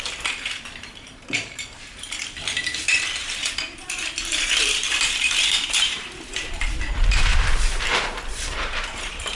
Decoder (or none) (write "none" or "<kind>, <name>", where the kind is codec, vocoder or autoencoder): vocoder, BigVGAN v2